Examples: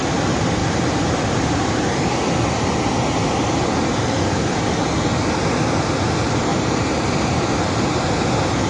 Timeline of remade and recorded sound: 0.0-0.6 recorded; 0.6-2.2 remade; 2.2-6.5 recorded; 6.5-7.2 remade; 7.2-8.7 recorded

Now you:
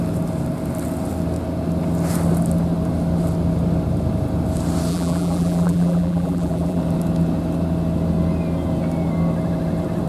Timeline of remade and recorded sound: 0.0-4.9 recorded; 4.9-6.8 remade; 6.8-10.1 recorded

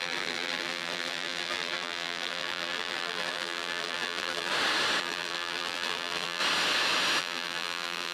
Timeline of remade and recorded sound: 0.0-4.5 remade; 4.5-5.0 recorded; 5.0-6.4 remade; 6.4-7.2 recorded; 7.2-8.1 remade

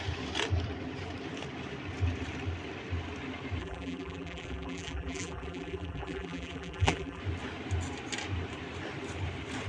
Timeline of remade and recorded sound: 0.0-3.6 recorded; 3.6-7.2 remade; 7.2-9.7 recorded

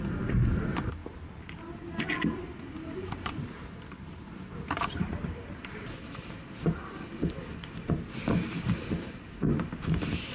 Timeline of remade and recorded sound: 0.0-1.0 remade; 1.0-2.6 recorded; 2.6-6.8 remade; 6.8-8.7 recorded; 8.7-10.3 remade